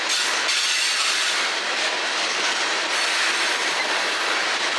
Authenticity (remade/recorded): recorded